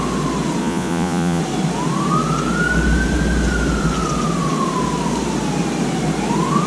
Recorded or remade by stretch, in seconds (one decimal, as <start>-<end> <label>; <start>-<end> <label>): 0.0-0.6 recorded; 0.6-1.4 remade; 1.4-6.7 recorded